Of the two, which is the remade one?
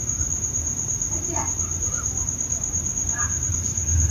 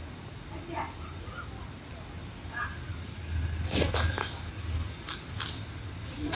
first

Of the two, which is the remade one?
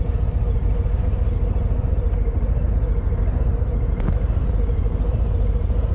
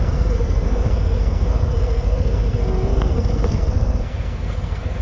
second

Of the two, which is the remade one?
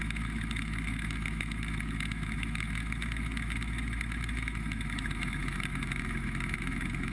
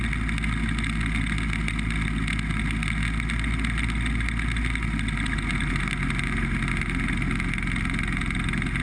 first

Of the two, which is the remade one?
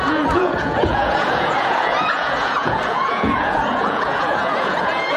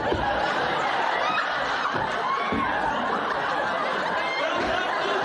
first